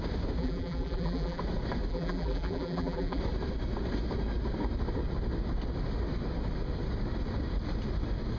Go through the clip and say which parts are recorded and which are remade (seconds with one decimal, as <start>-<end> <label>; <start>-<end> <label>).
0.0-0.4 recorded; 0.4-1.4 remade; 1.4-1.9 recorded; 1.9-3.2 remade; 3.2-8.4 recorded